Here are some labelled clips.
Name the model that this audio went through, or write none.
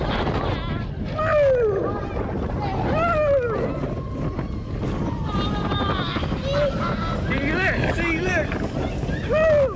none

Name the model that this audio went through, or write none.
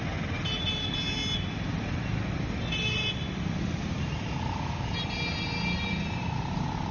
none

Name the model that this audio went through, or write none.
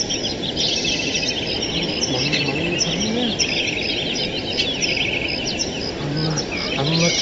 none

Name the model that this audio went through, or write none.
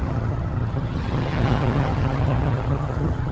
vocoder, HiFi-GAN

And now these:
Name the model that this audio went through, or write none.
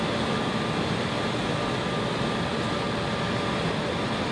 none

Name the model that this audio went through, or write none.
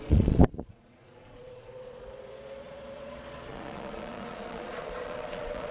vocoder, Vocos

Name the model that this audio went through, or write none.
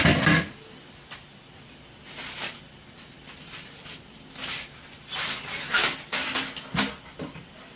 none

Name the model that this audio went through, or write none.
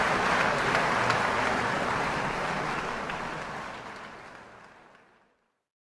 none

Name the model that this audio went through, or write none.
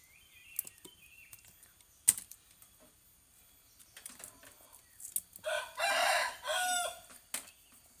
none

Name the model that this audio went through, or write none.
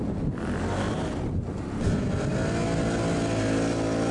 none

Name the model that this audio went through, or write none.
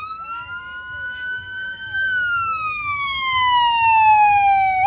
autoencoder, DAC-VAE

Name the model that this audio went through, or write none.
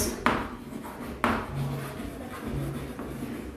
none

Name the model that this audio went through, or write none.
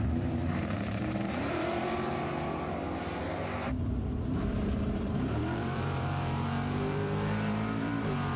vocoder, BigVGAN v2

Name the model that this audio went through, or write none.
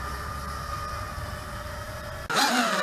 none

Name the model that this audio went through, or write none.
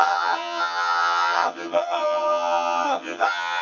vocoder, HiFi-GAN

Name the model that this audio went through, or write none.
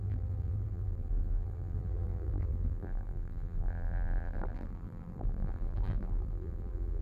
vocoder, BigVGAN v2